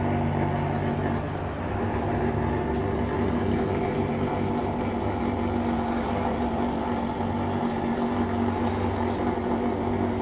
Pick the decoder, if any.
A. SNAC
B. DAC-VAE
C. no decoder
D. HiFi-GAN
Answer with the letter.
C